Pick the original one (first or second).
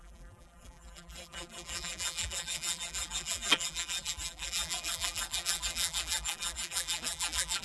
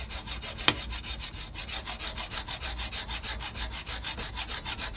second